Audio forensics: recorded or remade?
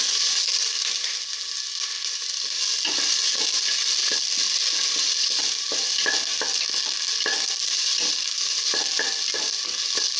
recorded